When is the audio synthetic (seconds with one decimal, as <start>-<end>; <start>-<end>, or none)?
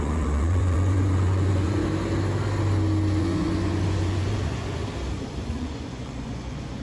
0.0-1.8; 3.2-4.8; 5.4-6.8